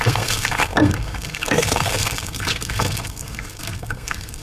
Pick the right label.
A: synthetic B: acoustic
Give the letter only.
A